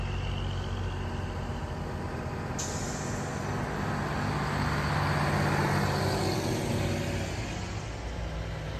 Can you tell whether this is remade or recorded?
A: recorded